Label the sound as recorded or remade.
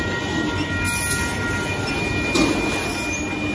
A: recorded